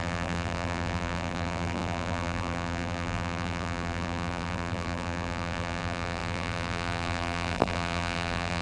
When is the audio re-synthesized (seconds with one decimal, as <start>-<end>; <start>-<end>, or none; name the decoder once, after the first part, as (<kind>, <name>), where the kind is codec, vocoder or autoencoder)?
0.0-8.6 (vocoder, BigVGAN v2)